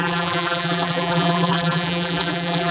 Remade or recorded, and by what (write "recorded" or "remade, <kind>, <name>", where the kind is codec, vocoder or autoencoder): remade, vocoder, BigVGAN v2